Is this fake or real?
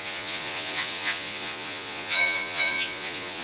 fake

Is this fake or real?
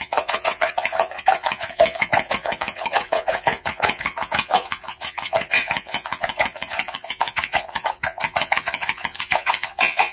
fake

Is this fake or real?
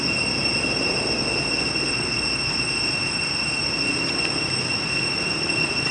real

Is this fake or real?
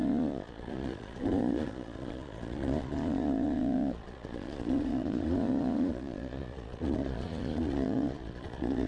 fake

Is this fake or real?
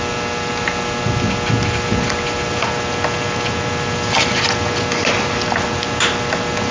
real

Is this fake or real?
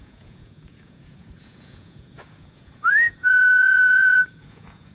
fake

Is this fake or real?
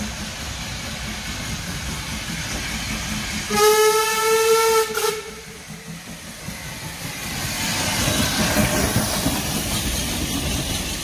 real